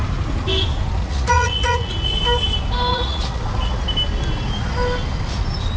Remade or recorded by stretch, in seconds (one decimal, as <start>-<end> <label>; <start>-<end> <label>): 0.0-1.0 recorded; 1.0-1.9 remade; 1.9-2.9 recorded; 2.9-3.4 remade; 3.4-5.8 recorded